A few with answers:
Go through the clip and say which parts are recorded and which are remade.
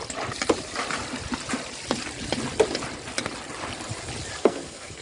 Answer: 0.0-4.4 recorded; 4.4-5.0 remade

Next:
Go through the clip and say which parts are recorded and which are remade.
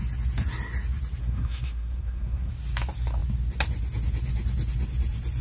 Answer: 0.0-1.2 recorded; 1.2-2.5 remade; 2.5-5.4 recorded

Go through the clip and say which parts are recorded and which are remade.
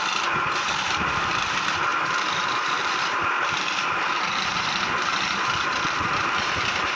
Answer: 0.0-7.0 remade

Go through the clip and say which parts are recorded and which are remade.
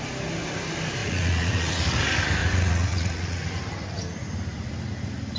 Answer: 0.0-1.0 recorded; 1.0-2.0 remade; 2.0-2.4 recorded; 2.4-3.6 remade; 3.6-5.4 recorded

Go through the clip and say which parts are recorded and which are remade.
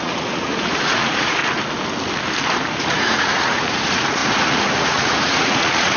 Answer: 0.0-1.4 remade; 1.4-2.8 recorded; 2.8-6.0 remade